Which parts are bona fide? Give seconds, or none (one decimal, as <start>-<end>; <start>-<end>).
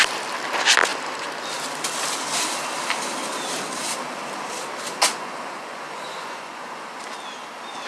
0.0-5.2; 7.0-7.9